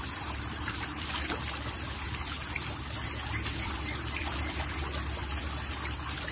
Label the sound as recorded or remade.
remade